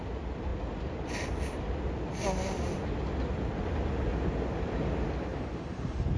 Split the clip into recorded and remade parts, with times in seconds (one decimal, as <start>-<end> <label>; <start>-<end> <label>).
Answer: 0.0-5.3 recorded; 5.3-6.2 remade